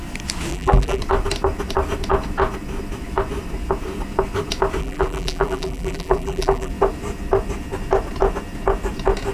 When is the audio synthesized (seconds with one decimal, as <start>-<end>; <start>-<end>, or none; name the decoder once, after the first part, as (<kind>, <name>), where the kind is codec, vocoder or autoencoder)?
0.5-1.0 (vocoder, BigVGAN v2); 4.8-6.7